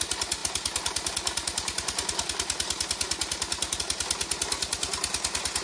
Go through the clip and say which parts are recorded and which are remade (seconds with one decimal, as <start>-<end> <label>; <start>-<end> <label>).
0.0-5.6 recorded